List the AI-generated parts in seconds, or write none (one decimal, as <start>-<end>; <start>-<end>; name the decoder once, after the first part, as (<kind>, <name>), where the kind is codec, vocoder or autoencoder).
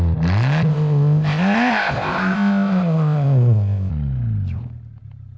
0.7-3.9 (codec, ZipCodec)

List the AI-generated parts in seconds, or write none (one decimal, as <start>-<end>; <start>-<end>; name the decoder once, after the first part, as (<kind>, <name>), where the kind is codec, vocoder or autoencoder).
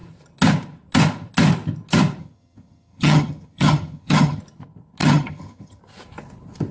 2.2-4.4 (vocoder, HiFi-GAN); 5.0-5.8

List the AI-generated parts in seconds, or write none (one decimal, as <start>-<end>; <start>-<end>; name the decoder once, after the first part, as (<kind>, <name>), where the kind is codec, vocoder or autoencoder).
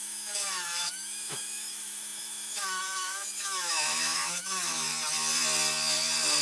0.0-4.9 (autoencoder, DAC-VAE)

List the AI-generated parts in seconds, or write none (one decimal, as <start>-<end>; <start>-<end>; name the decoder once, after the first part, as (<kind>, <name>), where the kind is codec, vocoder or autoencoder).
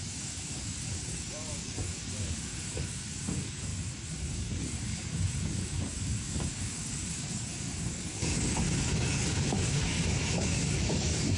0.0-3.7 (codec, DAC); 4.3-11.4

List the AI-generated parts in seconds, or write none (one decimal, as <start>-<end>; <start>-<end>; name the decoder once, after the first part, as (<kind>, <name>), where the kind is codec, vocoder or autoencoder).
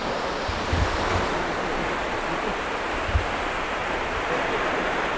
3.8-4.5 (vocoder, BigVGAN v2)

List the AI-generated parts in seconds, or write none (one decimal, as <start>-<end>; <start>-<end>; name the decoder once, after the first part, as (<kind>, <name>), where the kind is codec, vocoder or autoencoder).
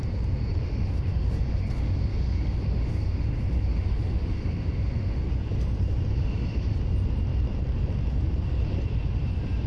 0.6-5.3 (autoencoder, DAC-VAE); 6.1-6.8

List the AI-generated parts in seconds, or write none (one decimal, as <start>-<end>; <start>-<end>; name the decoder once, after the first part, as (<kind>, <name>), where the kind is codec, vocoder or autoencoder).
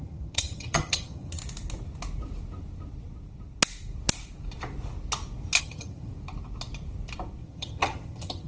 0.0-1.4 (vocoder, HiFi-GAN); 5.6-6.1; 7.4-8.5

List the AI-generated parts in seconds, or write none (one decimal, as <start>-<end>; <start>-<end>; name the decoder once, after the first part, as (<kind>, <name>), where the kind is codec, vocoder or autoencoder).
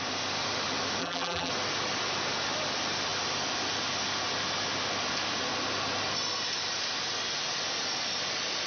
1.0-1.5 (vocoder, BigVGAN v2)